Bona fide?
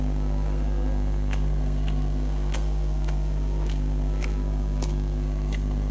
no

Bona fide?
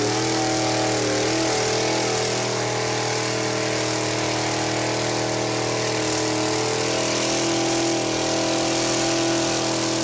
yes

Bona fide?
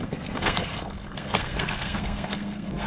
no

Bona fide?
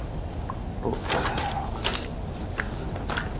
yes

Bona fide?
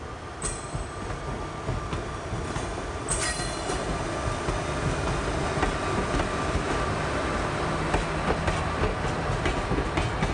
yes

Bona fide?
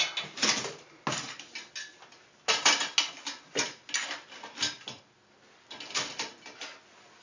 yes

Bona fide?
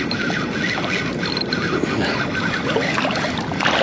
yes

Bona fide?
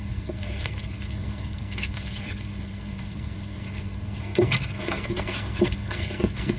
no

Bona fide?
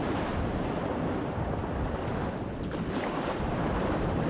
yes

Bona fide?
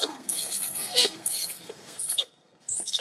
no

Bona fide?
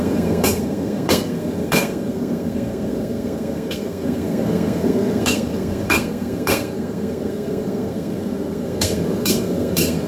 no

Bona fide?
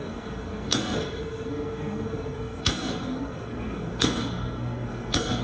no